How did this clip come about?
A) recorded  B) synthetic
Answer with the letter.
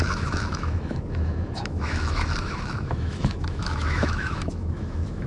B